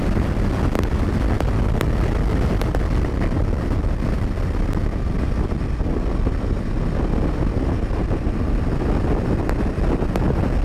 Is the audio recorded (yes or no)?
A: yes